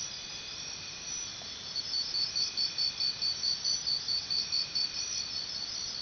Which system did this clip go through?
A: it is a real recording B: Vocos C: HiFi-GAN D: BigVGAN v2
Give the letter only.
A